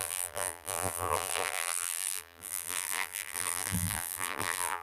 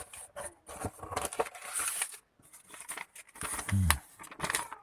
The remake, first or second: first